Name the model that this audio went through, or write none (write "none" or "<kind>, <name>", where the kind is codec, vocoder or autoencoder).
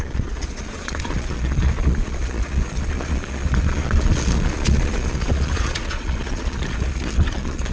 vocoder, Vocos